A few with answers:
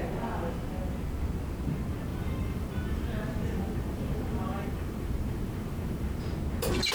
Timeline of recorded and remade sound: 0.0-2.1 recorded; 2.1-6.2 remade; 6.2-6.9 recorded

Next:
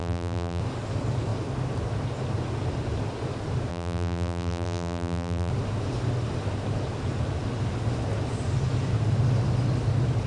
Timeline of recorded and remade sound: 0.0-0.6 remade; 0.6-3.7 recorded; 3.7-5.5 remade; 5.5-10.3 recorded

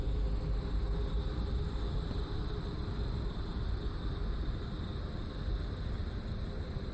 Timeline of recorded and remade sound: 0.0-1.3 recorded; 1.3-6.9 remade

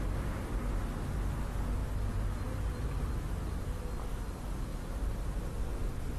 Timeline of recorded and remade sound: 0.0-4.7 recorded; 4.7-5.4 remade; 5.4-6.2 recorded

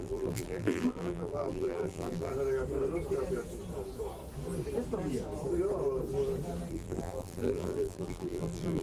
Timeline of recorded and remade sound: 0.0-2.3 remade; 2.3-6.7 recorded; 6.7-8.8 remade

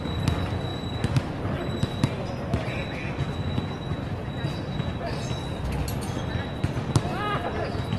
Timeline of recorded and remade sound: 0.0-8.0 recorded

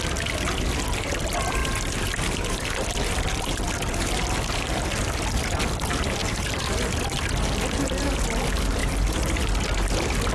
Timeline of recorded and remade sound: 0.0-1.6 recorded; 1.6-2.9 remade; 2.9-6.2 recorded; 6.2-6.7 remade; 6.7-8.8 recorded; 8.8-9.4 remade; 9.4-10.3 recorded

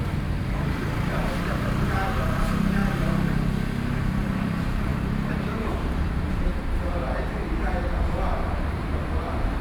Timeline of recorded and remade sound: 0.0-2.8 remade; 2.8-3.9 recorded; 3.9-9.6 remade